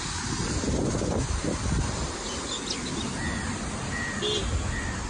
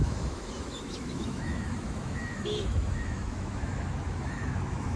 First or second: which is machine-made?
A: second